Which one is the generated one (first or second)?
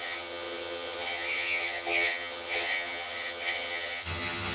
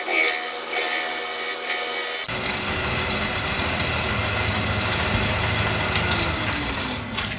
first